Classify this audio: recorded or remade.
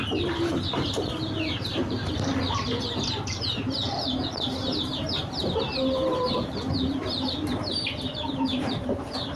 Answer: remade